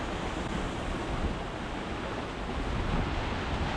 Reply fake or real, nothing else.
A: real